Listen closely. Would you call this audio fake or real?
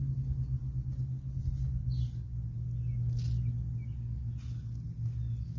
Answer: real